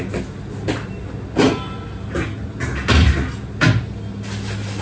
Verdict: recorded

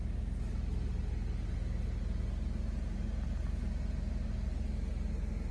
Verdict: recorded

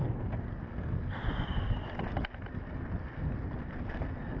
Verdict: recorded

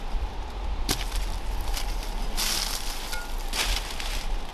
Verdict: recorded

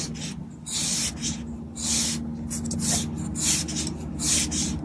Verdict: recorded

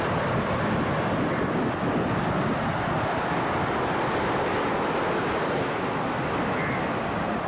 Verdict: recorded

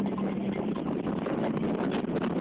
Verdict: recorded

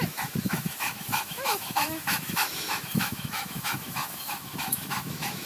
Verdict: remade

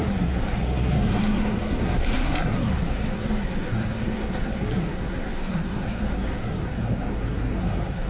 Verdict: remade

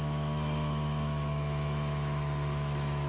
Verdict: remade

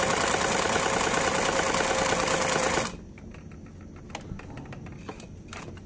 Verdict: recorded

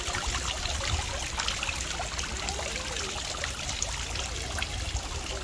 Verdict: recorded